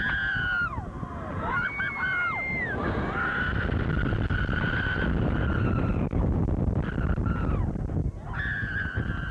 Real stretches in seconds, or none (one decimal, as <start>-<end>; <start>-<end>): 0.0-2.8; 6.4-9.3